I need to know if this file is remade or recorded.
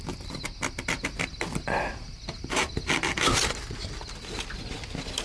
recorded